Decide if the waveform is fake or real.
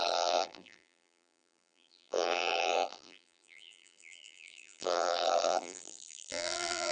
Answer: fake